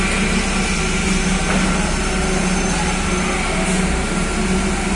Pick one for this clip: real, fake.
real